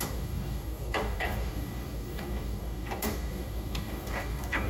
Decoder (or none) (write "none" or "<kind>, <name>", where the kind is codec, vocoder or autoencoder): codec, DAC